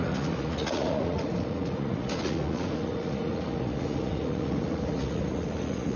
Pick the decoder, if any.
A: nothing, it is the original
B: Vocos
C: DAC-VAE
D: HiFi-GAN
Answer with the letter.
B